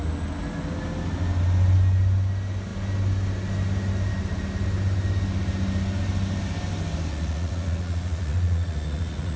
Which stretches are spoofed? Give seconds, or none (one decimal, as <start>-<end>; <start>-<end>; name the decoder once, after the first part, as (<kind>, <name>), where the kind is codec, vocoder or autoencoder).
7.1-9.4 (vocoder, Vocos)